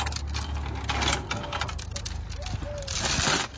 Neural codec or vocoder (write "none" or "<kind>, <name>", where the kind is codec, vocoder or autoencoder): none